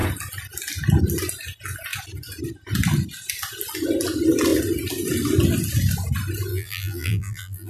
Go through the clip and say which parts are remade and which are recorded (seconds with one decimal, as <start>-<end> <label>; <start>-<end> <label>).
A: 0.0-6.5 recorded; 6.5-7.7 remade